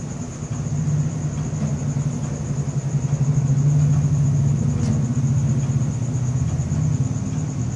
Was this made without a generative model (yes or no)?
yes